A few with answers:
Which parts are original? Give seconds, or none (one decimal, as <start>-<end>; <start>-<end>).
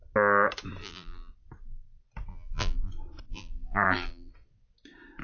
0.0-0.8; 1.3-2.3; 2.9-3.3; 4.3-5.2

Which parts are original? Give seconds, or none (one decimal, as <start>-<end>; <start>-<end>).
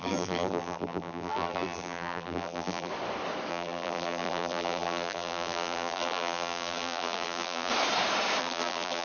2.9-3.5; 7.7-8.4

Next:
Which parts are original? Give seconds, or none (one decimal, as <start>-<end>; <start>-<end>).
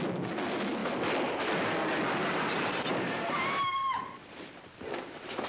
0.0-0.8; 1.7-2.2